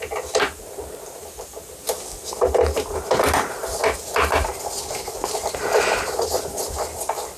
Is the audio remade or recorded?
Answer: recorded